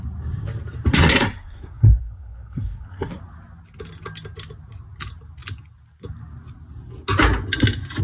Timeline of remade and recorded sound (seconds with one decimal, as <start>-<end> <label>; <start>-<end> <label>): 0.0-0.9 recorded; 0.9-3.2 remade; 3.2-8.0 recorded

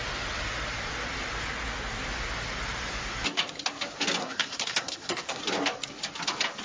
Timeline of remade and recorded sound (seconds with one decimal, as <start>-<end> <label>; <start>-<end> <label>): 0.0-4.2 recorded; 4.2-5.4 remade; 5.4-6.6 recorded

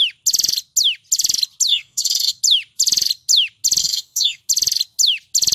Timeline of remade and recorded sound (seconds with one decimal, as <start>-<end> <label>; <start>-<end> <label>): 0.0-1.7 recorded; 1.7-2.4 remade; 2.4-3.8 recorded; 3.8-4.4 remade; 4.4-5.5 recorded